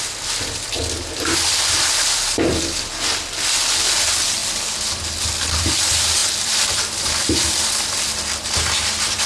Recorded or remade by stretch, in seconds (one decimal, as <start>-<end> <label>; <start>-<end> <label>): 0.0-9.3 recorded